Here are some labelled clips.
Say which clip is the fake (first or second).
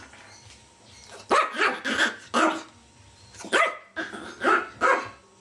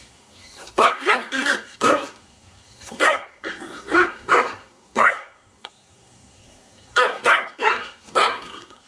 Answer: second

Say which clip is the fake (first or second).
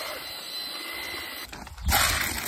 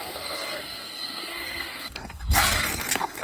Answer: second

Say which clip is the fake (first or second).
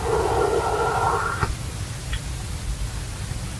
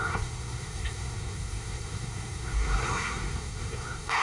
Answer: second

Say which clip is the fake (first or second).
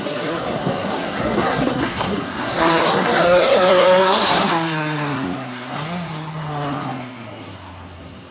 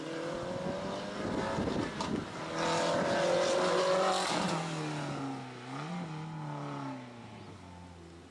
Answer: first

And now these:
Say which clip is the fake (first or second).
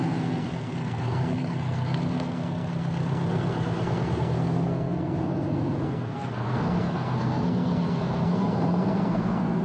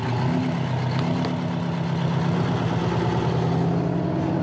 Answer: first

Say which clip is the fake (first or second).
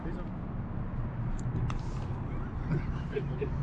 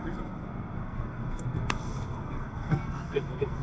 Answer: second